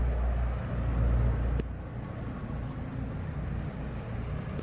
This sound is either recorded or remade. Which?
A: recorded